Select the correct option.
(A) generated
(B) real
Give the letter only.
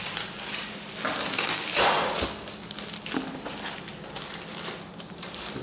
B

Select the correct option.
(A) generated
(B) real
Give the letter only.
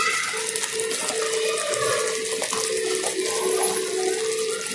B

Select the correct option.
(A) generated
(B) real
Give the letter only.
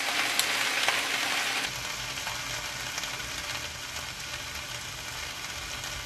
B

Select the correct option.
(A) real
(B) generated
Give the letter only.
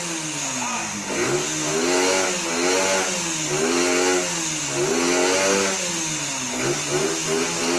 A